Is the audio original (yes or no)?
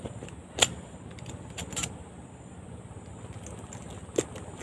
yes